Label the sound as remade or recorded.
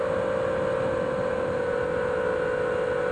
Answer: recorded